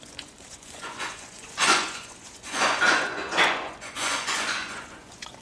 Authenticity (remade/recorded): remade